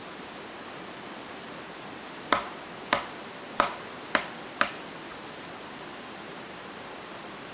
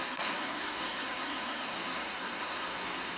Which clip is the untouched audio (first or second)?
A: first